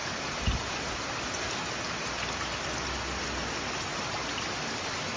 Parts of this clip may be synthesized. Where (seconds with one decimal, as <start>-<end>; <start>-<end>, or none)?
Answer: 3.9-5.2